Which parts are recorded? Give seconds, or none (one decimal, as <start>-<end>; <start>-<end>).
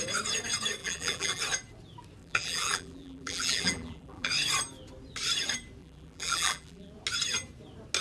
0.0-0.8; 1.4-2.2; 4.3-5.8; 6.9-8.0